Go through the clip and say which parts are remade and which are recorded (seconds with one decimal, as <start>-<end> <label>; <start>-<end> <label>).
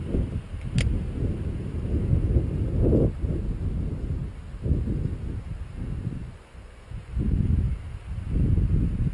0.0-6.2 recorded; 6.2-7.1 remade; 7.1-9.1 recorded